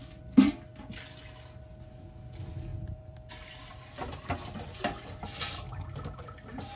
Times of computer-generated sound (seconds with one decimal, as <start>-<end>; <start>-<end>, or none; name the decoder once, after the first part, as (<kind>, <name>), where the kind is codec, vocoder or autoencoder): 2.7-3.3 (vocoder, BigVGAN v2)